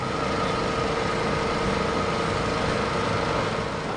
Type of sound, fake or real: real